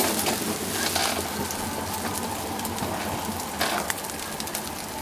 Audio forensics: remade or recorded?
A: recorded